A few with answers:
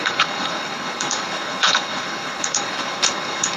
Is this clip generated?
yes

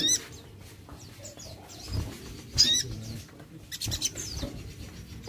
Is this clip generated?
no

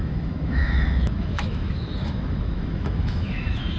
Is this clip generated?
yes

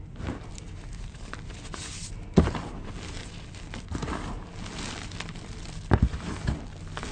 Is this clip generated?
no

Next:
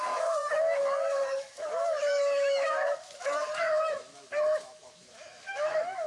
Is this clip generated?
yes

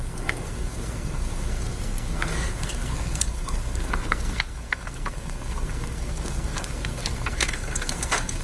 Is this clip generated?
yes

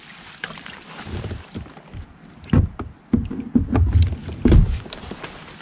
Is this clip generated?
no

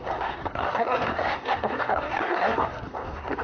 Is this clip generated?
yes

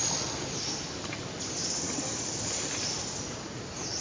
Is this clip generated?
no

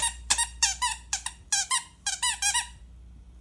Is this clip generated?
no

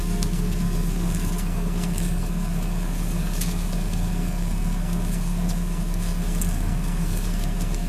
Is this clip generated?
yes